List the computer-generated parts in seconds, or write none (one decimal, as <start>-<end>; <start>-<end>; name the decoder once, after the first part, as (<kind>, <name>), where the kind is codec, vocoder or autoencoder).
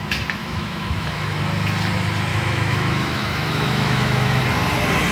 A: 0.4-1.4 (autoencoder, DAC-VAE); 2.3-4.4